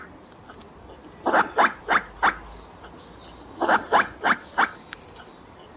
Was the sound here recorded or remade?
recorded